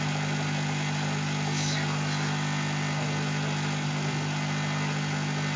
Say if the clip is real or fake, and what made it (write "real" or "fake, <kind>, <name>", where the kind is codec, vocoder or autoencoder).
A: real